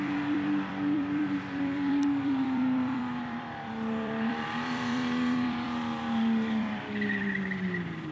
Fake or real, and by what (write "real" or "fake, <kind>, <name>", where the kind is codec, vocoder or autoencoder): fake, vocoder, BigVGAN v2